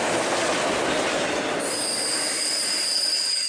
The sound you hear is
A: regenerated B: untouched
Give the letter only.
B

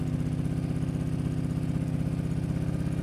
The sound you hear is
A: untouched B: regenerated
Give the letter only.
A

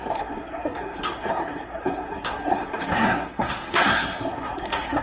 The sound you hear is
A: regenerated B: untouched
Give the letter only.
A